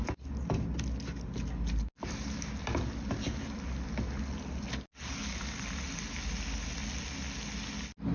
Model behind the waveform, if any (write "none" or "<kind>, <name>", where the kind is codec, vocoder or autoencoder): none